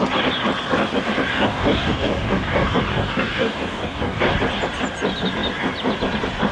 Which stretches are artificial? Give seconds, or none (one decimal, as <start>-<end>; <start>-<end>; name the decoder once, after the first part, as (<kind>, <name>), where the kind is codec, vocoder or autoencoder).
1.3-4.2 (codec, DAC)